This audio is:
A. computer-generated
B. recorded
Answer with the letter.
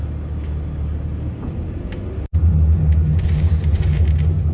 B